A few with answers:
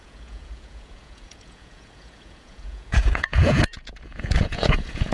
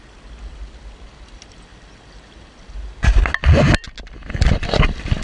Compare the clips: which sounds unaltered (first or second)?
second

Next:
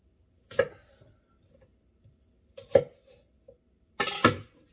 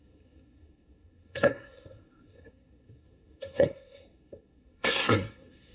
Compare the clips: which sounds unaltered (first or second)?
first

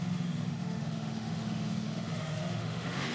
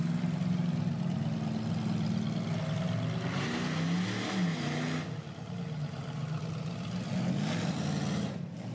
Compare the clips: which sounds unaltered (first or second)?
second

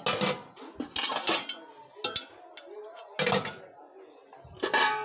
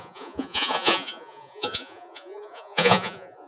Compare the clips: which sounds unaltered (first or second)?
first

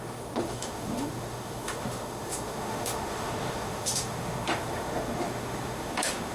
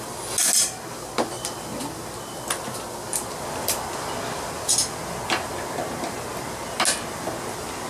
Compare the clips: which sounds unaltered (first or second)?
second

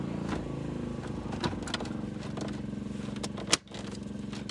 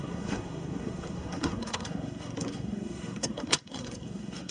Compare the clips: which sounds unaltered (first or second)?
first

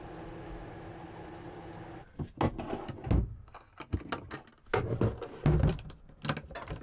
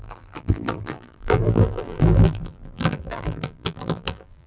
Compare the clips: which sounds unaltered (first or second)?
first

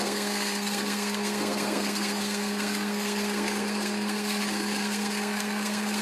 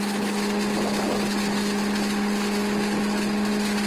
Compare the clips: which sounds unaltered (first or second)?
second